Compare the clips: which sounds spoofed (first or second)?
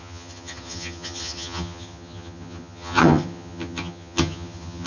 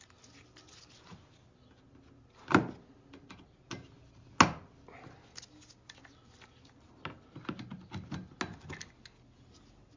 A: first